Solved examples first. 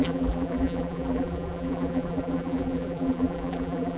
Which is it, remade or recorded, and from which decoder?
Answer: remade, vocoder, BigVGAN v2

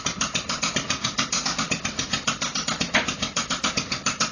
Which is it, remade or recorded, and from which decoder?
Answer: remade, vocoder, BigVGAN v2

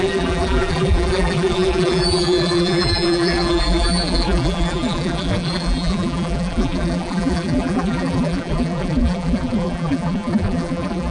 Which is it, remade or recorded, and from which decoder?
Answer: remade, vocoder, BigVGAN v2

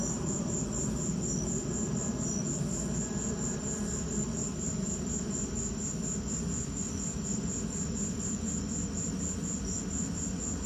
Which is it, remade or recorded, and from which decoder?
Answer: recorded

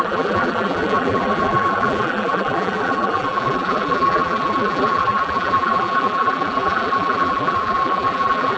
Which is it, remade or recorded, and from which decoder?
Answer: remade, vocoder, BigVGAN v2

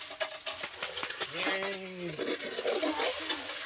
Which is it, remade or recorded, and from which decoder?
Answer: recorded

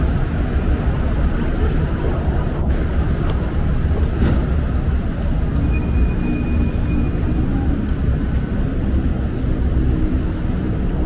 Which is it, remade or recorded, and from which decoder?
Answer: recorded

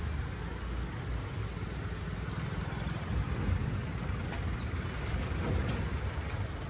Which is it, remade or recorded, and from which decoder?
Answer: recorded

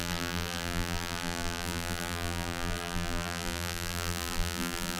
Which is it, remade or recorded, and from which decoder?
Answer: remade, vocoder, BigVGAN v2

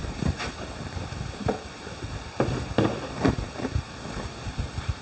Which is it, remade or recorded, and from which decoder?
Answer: remade, vocoder, BigVGAN v2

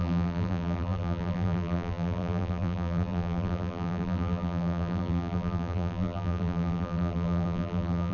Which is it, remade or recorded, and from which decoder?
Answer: remade, vocoder, BigVGAN v2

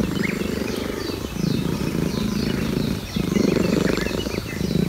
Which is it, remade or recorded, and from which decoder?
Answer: recorded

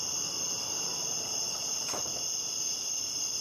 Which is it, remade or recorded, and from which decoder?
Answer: remade, vocoder, BigVGAN v2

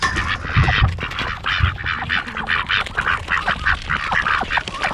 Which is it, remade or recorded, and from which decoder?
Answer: recorded